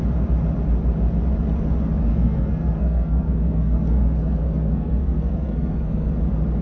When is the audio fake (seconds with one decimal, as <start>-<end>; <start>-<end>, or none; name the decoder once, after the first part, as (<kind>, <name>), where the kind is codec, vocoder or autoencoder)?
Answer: 2.1-6.1 (codec, SNAC)